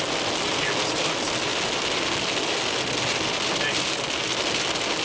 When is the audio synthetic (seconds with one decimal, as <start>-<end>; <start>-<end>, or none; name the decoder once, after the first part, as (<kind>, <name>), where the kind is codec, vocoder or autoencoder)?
none